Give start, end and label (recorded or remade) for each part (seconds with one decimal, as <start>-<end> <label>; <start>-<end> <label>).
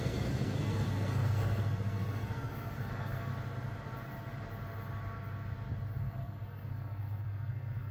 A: 0.0-3.3 remade; 3.3-6.0 recorded; 6.0-7.9 remade